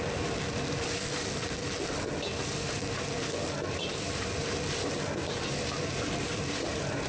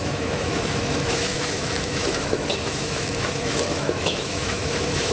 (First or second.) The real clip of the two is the first